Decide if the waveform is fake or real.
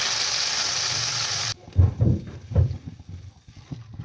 real